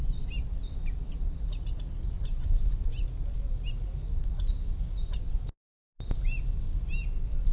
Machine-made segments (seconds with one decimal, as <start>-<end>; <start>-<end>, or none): none